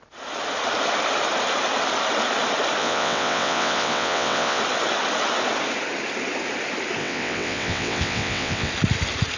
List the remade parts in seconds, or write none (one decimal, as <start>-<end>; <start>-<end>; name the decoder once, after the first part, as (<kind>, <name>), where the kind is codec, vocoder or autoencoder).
2.8-4.6 (vocoder, WaveNeXt); 7.0-8.7